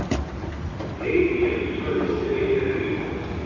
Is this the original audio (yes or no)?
yes